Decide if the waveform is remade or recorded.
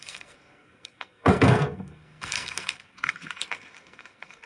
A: remade